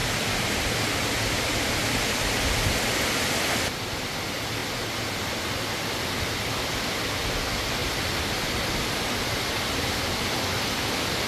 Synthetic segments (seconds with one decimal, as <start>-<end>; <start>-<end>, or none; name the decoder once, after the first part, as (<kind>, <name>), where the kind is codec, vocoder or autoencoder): none